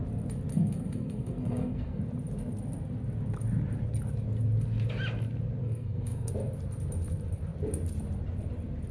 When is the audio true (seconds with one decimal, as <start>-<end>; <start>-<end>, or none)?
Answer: 0.0-0.5; 2.0-5.6; 6.3-8.9